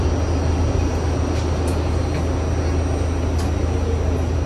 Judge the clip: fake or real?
real